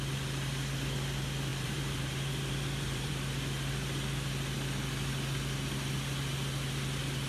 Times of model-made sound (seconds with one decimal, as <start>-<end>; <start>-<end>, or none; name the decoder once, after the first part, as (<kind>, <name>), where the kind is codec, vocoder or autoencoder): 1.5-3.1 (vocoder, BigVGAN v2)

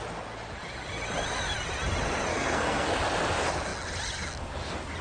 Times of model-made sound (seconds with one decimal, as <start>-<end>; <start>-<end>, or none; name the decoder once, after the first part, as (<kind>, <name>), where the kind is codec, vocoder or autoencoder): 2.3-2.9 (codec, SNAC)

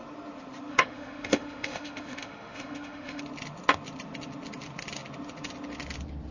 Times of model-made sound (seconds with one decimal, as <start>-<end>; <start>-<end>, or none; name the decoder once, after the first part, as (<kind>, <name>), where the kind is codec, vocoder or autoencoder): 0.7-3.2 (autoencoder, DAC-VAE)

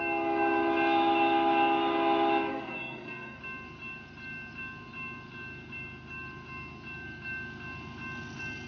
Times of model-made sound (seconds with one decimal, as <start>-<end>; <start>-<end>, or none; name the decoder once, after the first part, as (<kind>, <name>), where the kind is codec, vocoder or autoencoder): 2.5-3.4 (codec, SNAC)

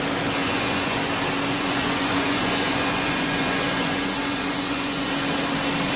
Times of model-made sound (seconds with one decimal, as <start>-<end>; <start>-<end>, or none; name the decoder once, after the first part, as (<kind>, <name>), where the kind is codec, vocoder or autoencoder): 0.4-1.1 (vocoder, Vocos); 1.5-5.1

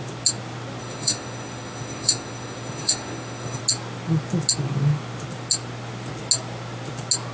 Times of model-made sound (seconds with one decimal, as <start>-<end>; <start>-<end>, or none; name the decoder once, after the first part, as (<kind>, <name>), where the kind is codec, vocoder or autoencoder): 0.8-3.6 (autoencoder, DAC-VAE)